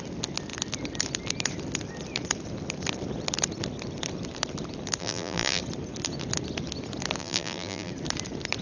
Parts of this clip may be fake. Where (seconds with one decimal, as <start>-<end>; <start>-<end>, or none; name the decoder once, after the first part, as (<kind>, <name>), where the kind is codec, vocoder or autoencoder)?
5.0-5.6 (vocoder, BigVGAN v2); 7.2-7.9